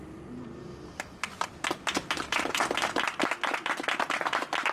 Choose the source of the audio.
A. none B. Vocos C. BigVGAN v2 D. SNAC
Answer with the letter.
A